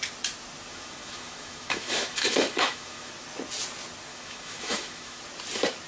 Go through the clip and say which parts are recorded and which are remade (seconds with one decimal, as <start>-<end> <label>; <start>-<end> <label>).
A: 0.0-0.7 recorded; 0.7-3.1 remade; 3.1-4.1 recorded; 4.1-5.2 remade; 5.2-5.9 recorded